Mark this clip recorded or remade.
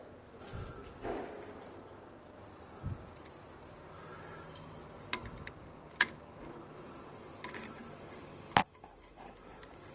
recorded